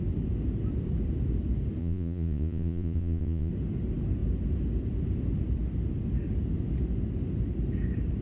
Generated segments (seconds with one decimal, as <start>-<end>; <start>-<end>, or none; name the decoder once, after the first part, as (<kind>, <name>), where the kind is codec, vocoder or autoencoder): 1.8-3.5 (vocoder, Vocos)